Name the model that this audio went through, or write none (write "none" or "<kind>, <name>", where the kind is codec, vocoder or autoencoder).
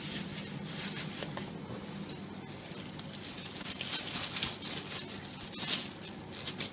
none